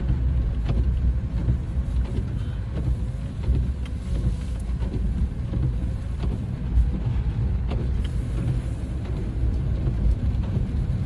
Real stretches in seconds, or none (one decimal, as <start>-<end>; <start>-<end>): 0.0-7.4; 8.0-11.1